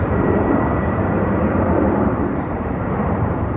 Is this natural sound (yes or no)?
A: no